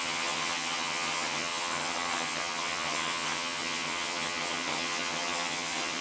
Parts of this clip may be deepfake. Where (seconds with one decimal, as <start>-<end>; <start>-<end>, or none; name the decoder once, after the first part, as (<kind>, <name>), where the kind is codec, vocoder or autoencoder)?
0.0-6.0 (vocoder, HiFi-GAN)